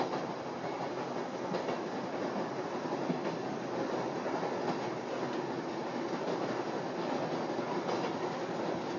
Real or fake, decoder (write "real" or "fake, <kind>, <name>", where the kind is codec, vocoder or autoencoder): real